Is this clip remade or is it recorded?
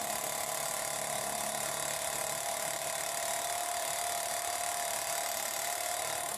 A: recorded